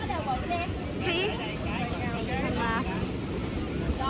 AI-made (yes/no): no